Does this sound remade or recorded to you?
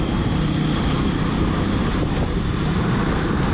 remade